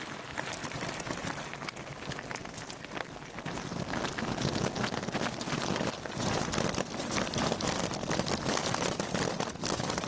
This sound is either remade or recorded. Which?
recorded